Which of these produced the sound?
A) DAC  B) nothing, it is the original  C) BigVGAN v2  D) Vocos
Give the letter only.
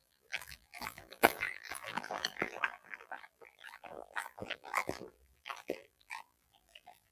C